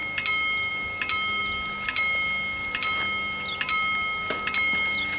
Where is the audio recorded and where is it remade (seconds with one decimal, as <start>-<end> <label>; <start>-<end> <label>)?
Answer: 0.0-5.2 recorded